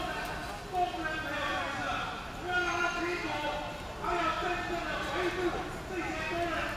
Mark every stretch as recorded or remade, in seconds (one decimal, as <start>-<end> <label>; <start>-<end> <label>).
0.0-6.8 recorded